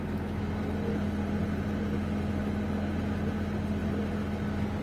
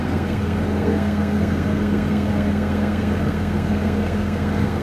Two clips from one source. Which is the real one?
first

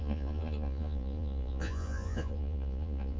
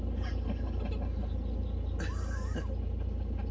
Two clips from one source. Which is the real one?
second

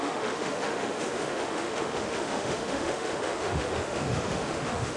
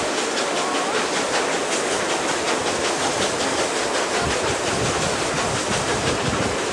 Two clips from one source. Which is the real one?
second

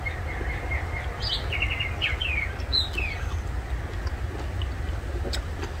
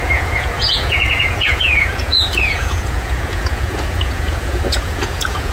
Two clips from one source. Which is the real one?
first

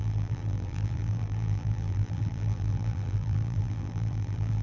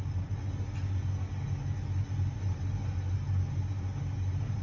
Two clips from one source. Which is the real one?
second